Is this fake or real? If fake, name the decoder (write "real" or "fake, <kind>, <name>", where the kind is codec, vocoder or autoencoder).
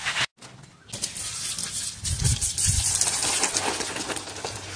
real